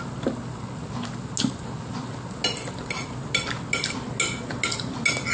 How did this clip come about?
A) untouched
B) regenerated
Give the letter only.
A